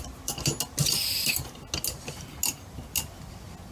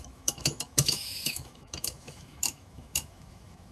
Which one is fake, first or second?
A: second